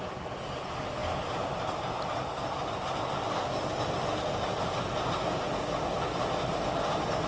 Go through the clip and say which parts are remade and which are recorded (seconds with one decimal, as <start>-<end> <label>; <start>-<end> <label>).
0.0-7.3 recorded